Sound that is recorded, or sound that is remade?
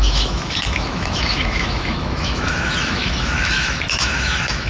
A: remade